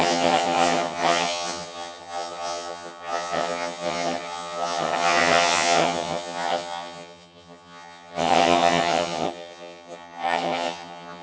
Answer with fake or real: fake